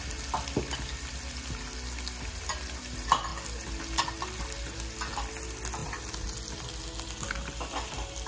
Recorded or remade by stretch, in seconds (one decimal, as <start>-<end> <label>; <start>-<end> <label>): 0.0-8.3 recorded